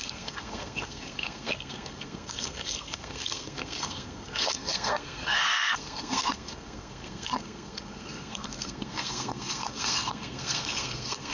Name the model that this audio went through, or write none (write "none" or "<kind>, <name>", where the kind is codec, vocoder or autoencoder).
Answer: codec, SNAC